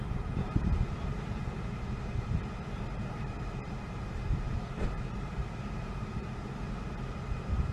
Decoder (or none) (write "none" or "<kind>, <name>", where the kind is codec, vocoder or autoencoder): vocoder, BigVGAN v2